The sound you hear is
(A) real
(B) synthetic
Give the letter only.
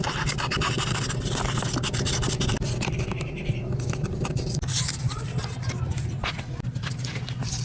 A